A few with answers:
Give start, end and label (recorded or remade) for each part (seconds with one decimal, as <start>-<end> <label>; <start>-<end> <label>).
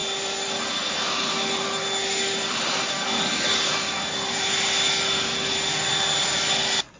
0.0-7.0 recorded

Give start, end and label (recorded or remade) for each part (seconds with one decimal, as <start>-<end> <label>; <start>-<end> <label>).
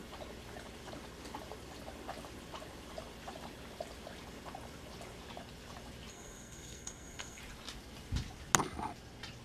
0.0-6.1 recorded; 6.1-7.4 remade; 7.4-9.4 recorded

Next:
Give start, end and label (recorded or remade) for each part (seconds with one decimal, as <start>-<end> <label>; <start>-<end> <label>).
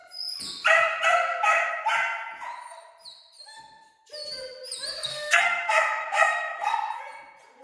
0.0-5.1 recorded; 5.1-7.0 remade; 7.0-7.6 recorded